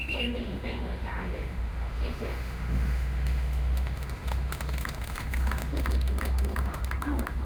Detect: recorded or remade remade